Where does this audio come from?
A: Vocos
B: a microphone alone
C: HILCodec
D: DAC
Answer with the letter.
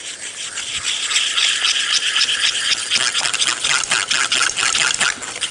B